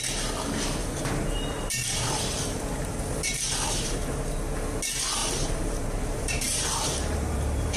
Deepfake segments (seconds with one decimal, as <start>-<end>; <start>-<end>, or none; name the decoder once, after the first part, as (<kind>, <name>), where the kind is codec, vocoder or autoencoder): 0.8-4.4 (vocoder, BigVGAN v2); 5.2-7.8